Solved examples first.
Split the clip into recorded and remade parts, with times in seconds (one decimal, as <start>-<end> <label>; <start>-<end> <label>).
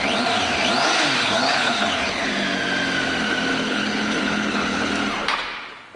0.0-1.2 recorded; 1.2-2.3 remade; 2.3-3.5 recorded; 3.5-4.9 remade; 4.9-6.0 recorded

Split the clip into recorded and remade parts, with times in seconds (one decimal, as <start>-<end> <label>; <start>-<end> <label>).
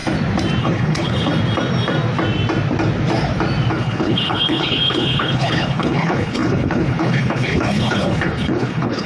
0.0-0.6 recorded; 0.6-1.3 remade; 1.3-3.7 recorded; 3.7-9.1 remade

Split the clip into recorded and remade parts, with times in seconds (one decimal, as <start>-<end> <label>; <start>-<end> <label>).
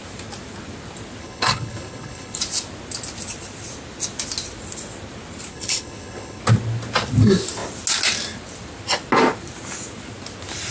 0.0-1.2 recorded; 1.2-2.4 remade; 2.4-5.5 recorded; 5.5-6.4 remade; 6.4-10.7 recorded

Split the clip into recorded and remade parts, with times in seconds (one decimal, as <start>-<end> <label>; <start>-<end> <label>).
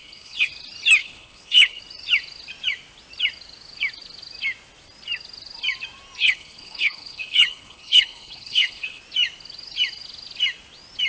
0.0-0.5 remade; 0.5-1.0 recorded; 1.0-1.8 remade; 1.8-6.2 recorded; 6.2-9.0 remade; 9.0-11.1 recorded